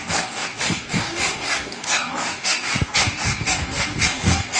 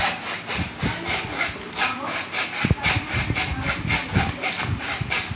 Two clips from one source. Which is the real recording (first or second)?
second